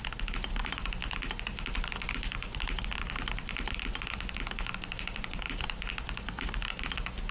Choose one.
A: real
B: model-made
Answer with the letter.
A